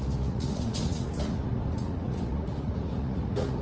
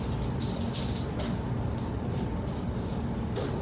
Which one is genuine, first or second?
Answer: second